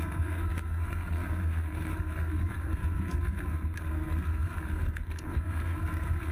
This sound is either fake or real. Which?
fake